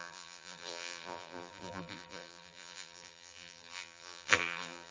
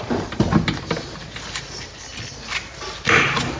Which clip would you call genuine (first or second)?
second